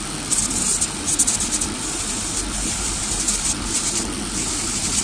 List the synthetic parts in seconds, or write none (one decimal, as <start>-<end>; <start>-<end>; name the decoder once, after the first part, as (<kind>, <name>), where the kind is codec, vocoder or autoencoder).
none